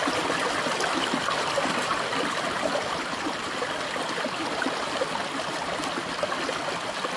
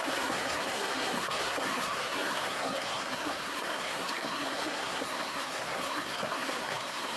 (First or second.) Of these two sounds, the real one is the first